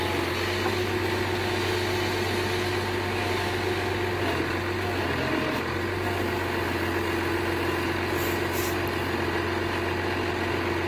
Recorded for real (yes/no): yes